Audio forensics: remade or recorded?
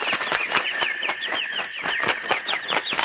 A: remade